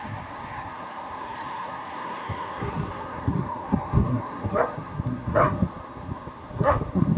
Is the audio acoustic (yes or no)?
no